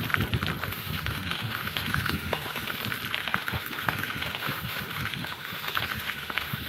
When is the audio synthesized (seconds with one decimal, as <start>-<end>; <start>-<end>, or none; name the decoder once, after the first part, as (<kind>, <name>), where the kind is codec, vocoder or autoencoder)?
0.7-2.8 (autoencoder, DAC-VAE); 3.2-6.7